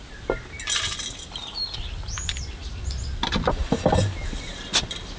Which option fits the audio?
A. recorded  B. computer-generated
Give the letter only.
A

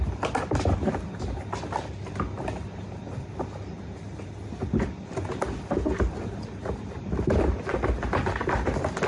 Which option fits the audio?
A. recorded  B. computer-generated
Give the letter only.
A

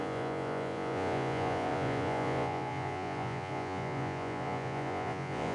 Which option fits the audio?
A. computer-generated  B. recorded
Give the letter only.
A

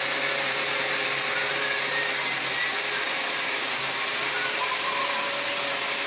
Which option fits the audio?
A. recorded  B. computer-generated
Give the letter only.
A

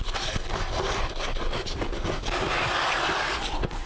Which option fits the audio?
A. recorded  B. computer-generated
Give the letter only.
A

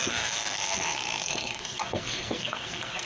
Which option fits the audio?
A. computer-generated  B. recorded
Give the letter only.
A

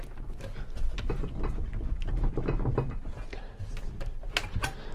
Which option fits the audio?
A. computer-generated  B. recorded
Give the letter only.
B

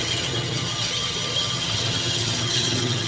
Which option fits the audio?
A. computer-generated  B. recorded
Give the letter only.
A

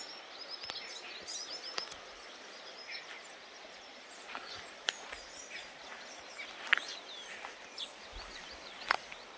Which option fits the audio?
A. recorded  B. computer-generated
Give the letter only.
A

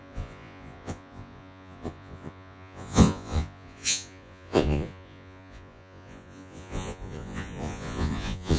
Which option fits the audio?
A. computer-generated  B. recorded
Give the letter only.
A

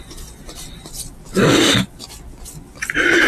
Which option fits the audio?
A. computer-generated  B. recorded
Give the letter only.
B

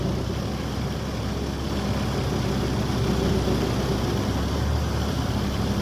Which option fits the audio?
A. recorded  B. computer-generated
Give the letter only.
A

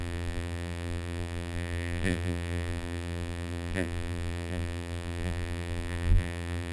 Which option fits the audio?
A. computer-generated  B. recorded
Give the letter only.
A